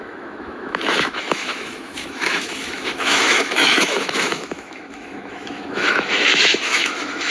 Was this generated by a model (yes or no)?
yes